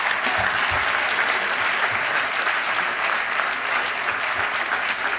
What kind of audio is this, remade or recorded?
recorded